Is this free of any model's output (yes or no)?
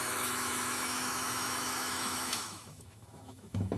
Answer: no